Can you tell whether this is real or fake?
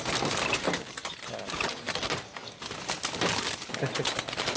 real